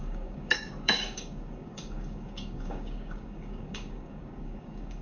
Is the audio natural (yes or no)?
no